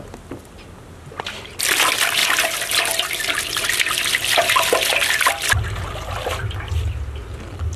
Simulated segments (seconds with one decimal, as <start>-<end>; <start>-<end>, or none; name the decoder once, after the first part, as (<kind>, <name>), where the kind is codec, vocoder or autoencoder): none